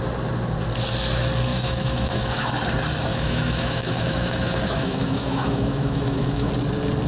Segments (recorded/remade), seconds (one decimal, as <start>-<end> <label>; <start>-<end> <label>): 0.0-1.5 recorded; 1.5-2.5 remade; 2.5-3.1 recorded; 3.1-6.5 remade; 6.5-7.1 recorded